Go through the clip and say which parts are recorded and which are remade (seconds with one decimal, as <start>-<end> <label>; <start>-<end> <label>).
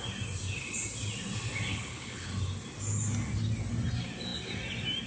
0.0-1.7 recorded; 1.7-2.3 remade; 2.3-5.1 recorded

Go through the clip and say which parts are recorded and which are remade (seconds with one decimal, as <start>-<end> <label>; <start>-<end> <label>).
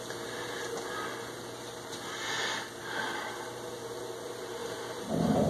0.0-5.5 recorded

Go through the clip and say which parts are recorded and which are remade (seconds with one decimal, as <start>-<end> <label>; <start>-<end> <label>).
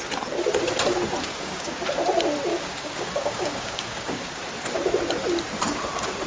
0.0-1.3 recorded; 1.3-1.8 remade; 1.8-2.5 recorded; 2.5-4.4 remade; 4.4-6.3 recorded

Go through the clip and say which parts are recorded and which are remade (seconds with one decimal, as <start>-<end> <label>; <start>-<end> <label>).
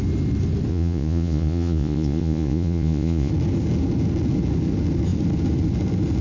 0.0-0.7 recorded; 0.7-3.3 remade; 3.3-6.2 recorded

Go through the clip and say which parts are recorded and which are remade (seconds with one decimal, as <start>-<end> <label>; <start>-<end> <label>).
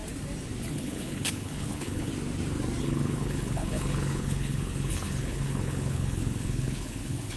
0.0-0.7 recorded; 0.7-2.1 remade; 2.1-2.8 recorded; 2.8-7.4 remade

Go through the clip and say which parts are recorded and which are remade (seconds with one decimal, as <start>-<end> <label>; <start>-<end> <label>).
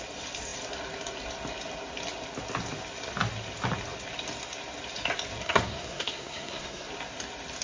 0.0-5.4 recorded; 5.4-6.9 remade; 6.9-7.6 recorded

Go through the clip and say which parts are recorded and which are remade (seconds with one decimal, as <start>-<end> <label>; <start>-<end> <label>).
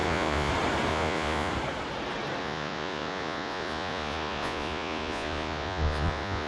0.0-0.5 remade; 0.5-0.9 recorded; 0.9-1.5 remade; 1.5-2.4 recorded; 2.4-6.5 remade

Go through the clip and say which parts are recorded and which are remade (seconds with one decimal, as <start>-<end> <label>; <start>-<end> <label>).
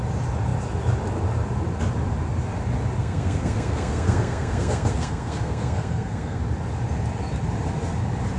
0.0-3.0 recorded; 3.0-6.4 remade; 6.4-8.4 recorded